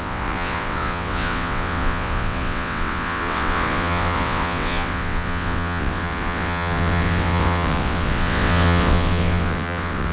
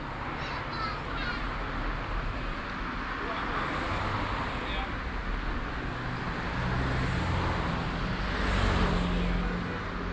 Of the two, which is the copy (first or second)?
first